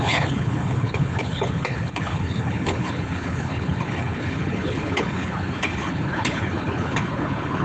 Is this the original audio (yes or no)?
no